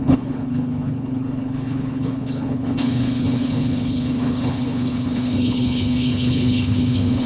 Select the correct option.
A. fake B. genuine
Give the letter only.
A